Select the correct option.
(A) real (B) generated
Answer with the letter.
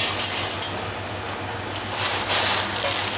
A